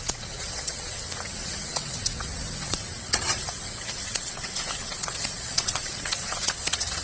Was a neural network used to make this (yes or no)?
yes